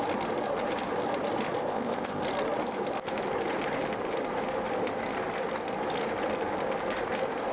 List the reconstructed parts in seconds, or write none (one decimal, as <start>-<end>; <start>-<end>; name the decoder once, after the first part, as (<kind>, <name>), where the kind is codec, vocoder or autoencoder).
1.6-2.2 (codec, ZipCodec)